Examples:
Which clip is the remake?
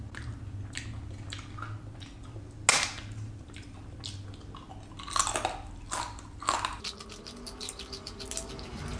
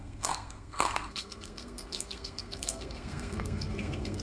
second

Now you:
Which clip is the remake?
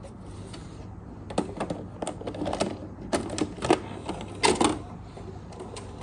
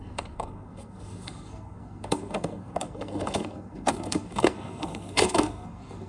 second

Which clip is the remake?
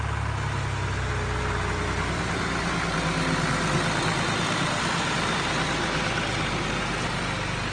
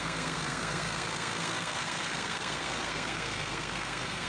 second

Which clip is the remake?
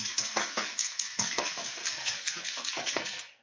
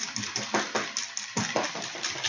first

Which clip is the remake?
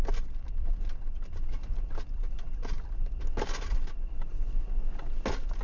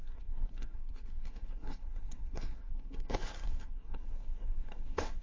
second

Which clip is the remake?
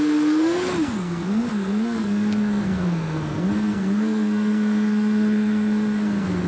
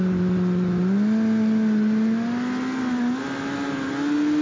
first